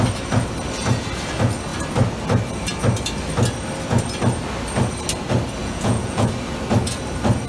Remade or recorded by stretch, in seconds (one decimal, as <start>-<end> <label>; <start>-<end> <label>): 0.0-5.6 recorded; 5.6-6.3 remade; 6.3-7.5 recorded